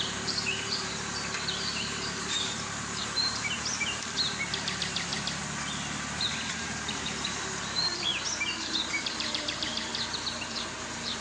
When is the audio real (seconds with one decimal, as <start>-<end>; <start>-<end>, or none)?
5.1-6.2; 8.1-8.8; 9.9-10.5